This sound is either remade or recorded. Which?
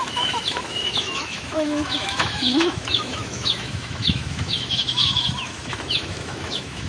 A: remade